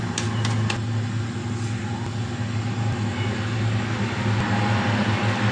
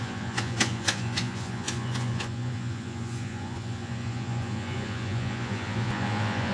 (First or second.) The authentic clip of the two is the first